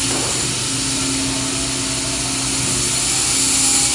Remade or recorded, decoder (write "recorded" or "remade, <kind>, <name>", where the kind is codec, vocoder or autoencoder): recorded